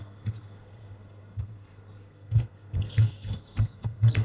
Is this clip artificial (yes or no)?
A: yes